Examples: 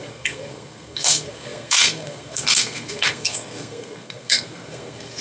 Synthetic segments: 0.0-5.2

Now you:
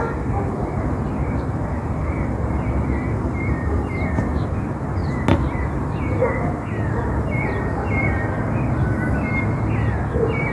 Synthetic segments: none

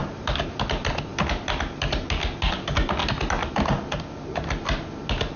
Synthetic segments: none

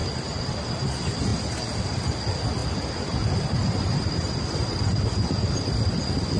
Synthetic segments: 0.0-0.6; 2.6-6.0

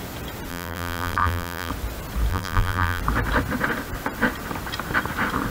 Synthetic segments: 0.5-1.7; 2.3-3.0

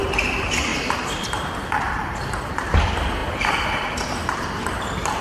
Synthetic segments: 0.0-0.7; 1.5-5.2